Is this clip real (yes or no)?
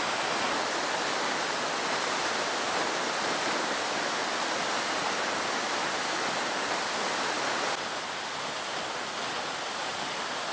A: yes